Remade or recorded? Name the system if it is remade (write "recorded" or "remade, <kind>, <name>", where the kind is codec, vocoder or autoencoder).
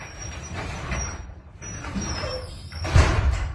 remade, vocoder, BigVGAN v2